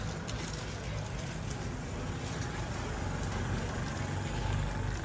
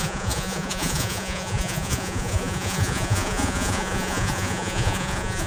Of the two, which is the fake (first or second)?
second